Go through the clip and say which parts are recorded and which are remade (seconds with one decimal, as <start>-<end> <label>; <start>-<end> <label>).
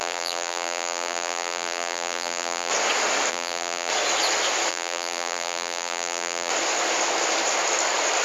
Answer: 0.0-2.7 remade; 2.7-3.3 recorded; 3.3-3.9 remade; 3.9-4.7 recorded; 4.7-6.5 remade; 6.5-8.2 recorded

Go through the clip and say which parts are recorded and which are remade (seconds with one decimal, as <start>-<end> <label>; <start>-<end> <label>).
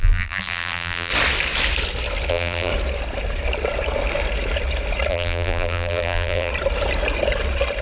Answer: 0.0-1.1 remade; 1.1-2.3 recorded; 2.3-2.7 remade; 2.7-5.1 recorded; 5.1-6.5 remade; 6.5-7.8 recorded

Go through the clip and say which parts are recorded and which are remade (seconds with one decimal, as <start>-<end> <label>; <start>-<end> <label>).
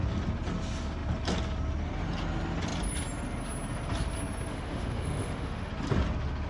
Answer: 0.0-4.5 recorded; 4.5-5.7 remade; 5.7-6.5 recorded